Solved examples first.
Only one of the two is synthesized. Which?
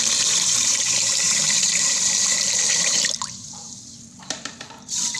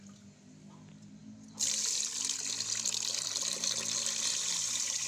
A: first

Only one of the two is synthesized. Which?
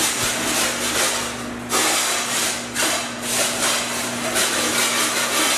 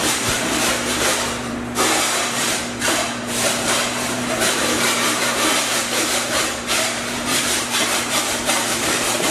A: second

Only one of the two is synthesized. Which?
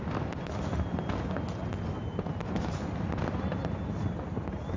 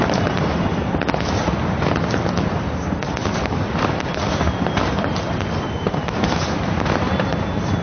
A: second